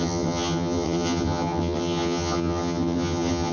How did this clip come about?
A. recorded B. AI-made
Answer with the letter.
B